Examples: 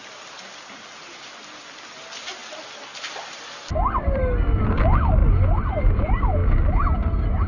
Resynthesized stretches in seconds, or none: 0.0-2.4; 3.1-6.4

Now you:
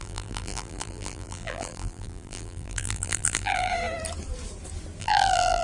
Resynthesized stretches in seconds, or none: 0.0-3.7; 5.0-5.6

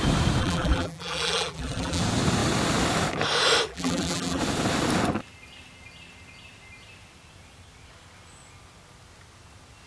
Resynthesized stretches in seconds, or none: 0.4-2.0; 3.7-4.4

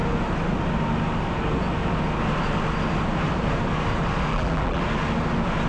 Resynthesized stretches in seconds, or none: 4.3-4.8

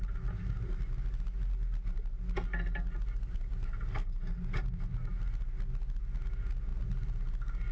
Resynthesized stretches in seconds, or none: none

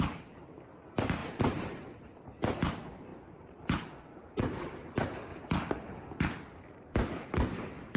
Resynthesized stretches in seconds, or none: 1.2-2.1; 3.1-3.8